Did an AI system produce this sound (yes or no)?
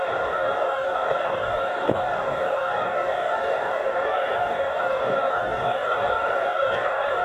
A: yes